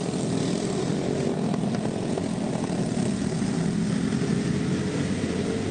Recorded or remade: recorded